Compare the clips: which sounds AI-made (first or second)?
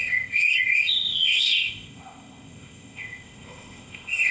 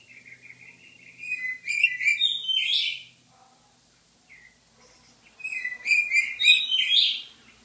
first